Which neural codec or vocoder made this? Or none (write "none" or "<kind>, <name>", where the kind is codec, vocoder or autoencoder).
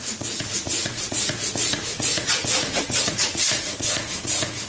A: vocoder, Vocos